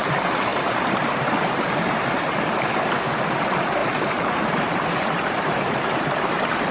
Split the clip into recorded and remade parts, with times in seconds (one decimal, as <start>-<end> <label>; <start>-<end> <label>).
0.0-0.5 recorded; 0.5-3.1 remade; 3.1-3.8 recorded; 3.8-6.7 remade